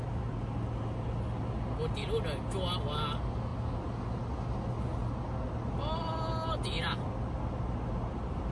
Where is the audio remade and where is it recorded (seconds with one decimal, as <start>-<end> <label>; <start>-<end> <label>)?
0.0-8.5 recorded